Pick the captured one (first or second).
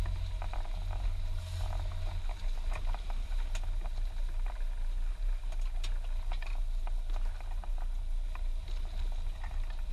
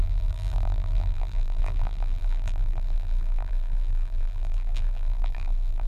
first